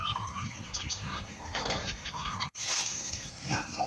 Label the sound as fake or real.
fake